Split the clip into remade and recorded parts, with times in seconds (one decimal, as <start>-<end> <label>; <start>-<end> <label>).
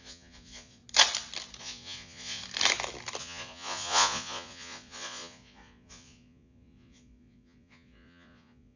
0.0-0.8 remade; 0.8-1.6 recorded; 1.6-2.4 remade; 2.4-3.2 recorded; 3.2-8.8 remade